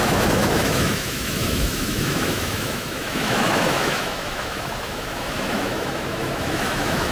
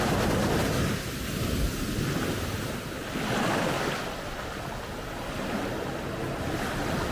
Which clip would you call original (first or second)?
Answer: second